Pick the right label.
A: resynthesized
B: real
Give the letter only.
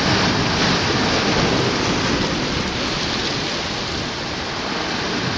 B